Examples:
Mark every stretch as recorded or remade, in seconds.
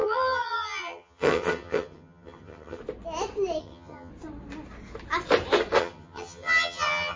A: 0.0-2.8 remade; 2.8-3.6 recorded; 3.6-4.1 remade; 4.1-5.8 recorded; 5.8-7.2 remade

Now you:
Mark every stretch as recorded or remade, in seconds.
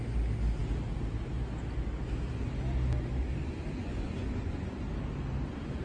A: 0.0-3.8 recorded; 3.8-4.8 remade; 4.8-5.8 recorded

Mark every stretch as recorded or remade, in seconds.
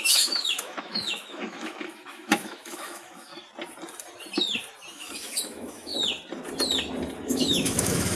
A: 0.0-3.3 remade; 3.3-4.9 recorded; 4.9-5.9 remade; 5.9-7.3 recorded; 7.3-8.2 remade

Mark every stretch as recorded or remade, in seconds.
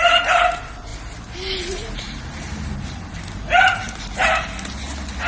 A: 0.0-5.3 recorded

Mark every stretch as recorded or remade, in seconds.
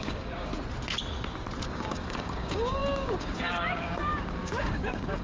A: 0.0-0.5 remade; 0.5-1.7 recorded; 1.7-5.2 remade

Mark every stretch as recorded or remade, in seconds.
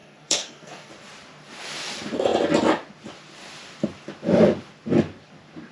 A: 0.0-0.9 remade; 0.9-5.7 recorded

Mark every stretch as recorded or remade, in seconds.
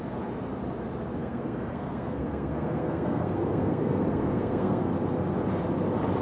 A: 0.0-1.2 recorded; 1.2-4.9 remade; 4.9-6.2 recorded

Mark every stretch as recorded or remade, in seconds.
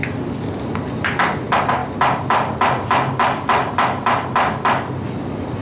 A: 0.0-5.6 recorded